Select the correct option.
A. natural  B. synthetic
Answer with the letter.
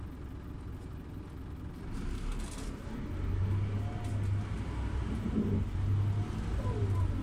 A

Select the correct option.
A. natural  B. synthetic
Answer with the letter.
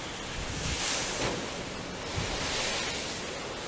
A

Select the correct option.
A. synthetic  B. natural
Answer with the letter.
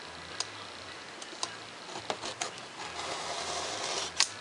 B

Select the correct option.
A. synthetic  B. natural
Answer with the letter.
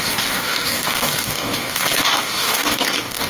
A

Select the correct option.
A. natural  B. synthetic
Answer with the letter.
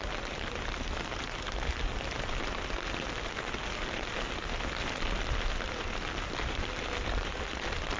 A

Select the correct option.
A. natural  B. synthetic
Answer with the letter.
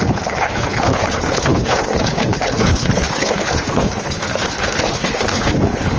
B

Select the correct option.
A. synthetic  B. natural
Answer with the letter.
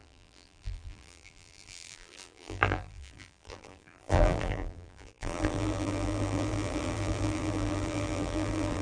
A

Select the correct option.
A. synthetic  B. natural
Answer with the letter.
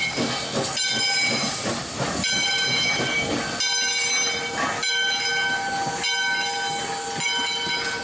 B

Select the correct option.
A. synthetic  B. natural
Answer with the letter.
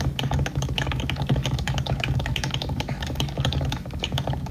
A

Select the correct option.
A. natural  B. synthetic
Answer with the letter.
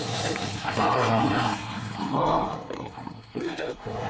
B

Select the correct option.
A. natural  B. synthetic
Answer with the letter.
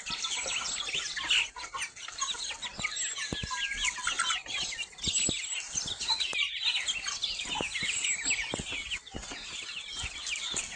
A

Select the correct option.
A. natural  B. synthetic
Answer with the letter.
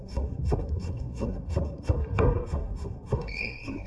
B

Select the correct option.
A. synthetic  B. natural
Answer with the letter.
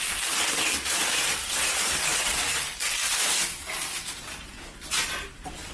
B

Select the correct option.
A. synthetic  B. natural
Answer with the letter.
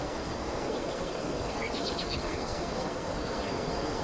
A